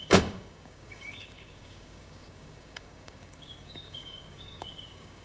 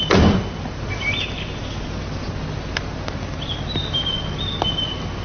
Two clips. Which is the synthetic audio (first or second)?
first